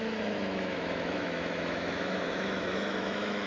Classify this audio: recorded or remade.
remade